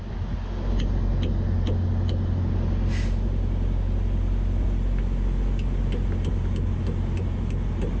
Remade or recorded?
recorded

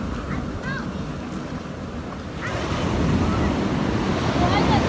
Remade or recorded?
recorded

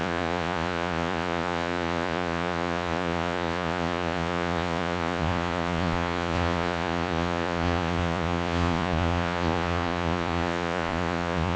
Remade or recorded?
remade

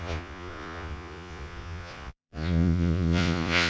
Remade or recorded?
remade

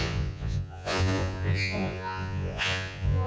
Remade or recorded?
remade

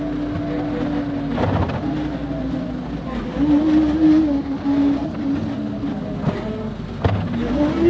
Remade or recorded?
recorded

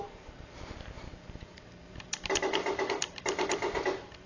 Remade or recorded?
remade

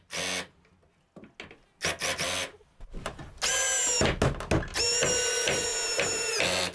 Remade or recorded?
recorded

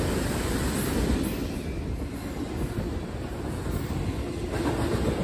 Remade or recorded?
recorded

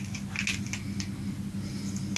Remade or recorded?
recorded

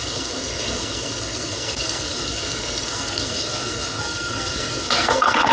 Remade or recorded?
remade